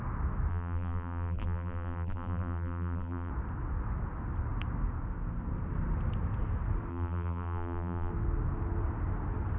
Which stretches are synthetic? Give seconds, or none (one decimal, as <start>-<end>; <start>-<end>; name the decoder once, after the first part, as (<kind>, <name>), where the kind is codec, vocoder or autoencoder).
0.5-3.3 (vocoder, BigVGAN v2); 6.9-8.1